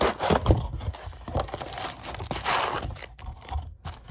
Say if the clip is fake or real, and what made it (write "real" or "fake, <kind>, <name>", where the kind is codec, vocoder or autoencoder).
real